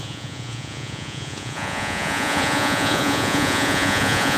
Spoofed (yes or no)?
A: yes